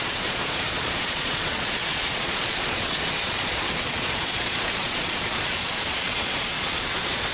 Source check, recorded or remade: remade